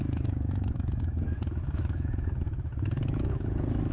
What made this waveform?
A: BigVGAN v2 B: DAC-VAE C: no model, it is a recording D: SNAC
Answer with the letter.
B